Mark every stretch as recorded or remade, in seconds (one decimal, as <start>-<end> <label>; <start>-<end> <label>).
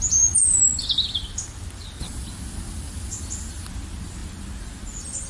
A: 0.0-5.3 recorded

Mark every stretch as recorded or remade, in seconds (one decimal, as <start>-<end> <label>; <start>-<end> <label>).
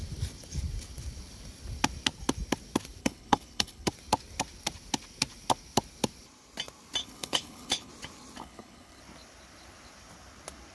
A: 0.0-3.0 recorded; 3.0-3.9 remade; 3.9-7.0 recorded; 7.0-7.9 remade; 7.9-8.4 recorded; 8.4-9.0 remade; 9.0-10.7 recorded